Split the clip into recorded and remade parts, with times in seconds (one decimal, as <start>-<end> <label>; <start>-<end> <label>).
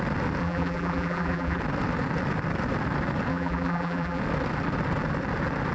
0.0-0.4 recorded; 0.4-1.6 remade; 1.6-3.3 recorded; 3.3-4.2 remade; 4.2-5.7 recorded